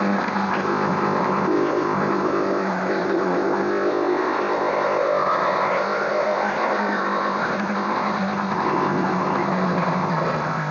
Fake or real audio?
fake